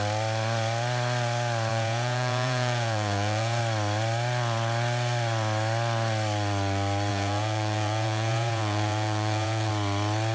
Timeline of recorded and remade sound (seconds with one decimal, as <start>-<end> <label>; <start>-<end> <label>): 0.0-1.7 recorded; 1.7-3.6 remade; 3.6-7.1 recorded; 7.1-9.7 remade; 9.7-10.3 recorded